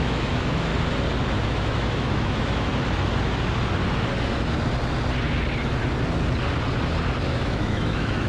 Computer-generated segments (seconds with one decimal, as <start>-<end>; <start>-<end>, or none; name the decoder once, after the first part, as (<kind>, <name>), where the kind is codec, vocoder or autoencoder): 0.0-0.7 (autoencoder, DAC-VAE); 1.5-2.7; 7.3-8.3